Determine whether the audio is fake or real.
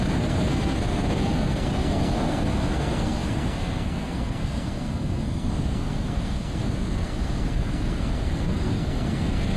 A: fake